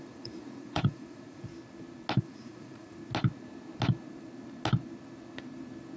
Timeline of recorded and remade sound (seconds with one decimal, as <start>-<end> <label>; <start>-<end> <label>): 0.0-1.5 remade; 1.5-2.2 recorded; 2.2-3.0 remade; 3.0-6.0 recorded